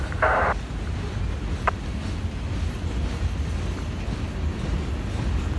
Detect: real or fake real